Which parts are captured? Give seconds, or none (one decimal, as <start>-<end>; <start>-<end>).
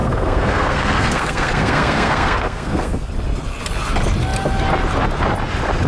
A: 3.1-5.9